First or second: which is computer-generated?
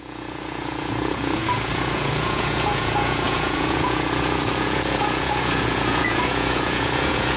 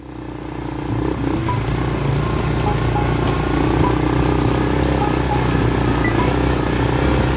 first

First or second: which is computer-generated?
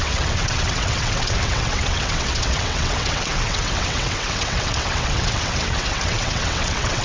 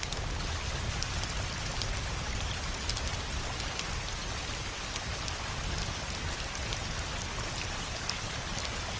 first